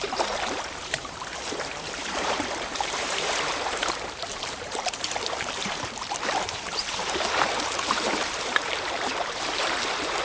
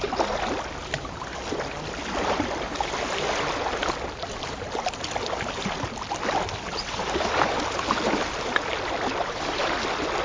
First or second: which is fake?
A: first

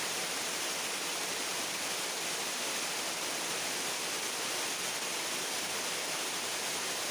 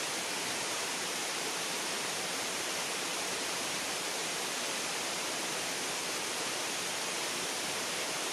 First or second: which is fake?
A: second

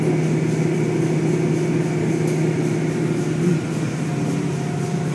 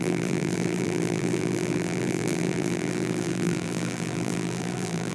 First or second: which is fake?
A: second